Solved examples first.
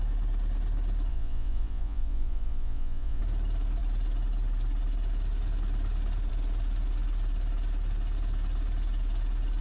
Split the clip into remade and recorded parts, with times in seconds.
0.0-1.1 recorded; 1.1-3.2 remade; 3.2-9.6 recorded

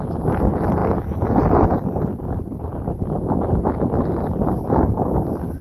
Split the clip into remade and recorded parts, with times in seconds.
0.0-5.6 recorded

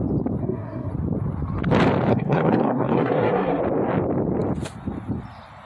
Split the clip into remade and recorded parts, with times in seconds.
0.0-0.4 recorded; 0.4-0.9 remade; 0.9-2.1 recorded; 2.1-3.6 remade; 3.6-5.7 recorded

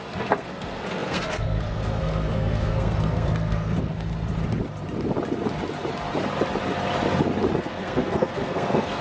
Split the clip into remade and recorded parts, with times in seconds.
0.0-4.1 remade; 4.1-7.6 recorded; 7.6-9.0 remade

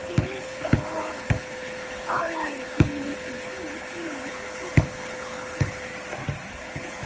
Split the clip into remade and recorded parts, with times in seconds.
0.0-5.9 remade; 5.9-6.5 recorded; 6.5-7.1 remade

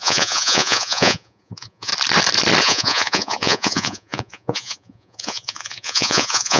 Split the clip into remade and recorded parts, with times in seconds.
0.0-1.9 remade; 1.9-2.6 recorded; 2.6-6.6 remade

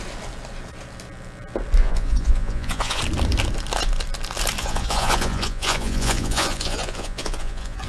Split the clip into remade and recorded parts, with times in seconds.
0.0-1.8 recorded; 1.8-3.0 remade; 3.0-4.6 recorded; 4.6-7.9 remade